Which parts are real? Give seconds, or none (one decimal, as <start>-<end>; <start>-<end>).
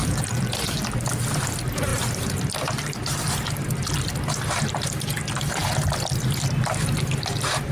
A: 0.6-7.7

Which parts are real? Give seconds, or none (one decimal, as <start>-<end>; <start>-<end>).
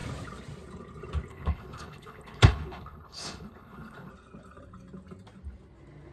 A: 0.0-1.3; 4.1-6.1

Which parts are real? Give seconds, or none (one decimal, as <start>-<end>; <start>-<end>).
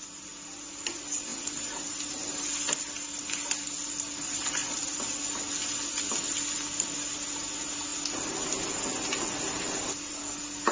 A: 0.0-10.7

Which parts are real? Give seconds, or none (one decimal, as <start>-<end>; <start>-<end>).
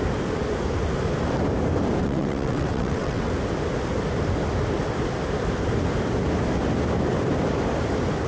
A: 0.0-2.0; 3.3-8.3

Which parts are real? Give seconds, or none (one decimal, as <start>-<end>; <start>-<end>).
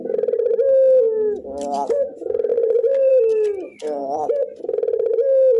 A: 0.0-2.5; 3.1-5.6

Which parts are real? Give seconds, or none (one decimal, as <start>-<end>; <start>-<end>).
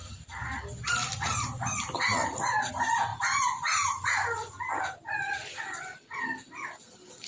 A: 0.0-7.3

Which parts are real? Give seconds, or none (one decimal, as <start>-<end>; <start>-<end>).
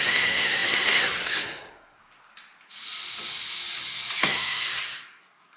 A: 2.0-4.2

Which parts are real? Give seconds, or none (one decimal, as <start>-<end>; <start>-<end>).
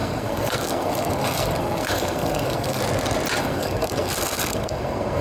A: 2.8-3.4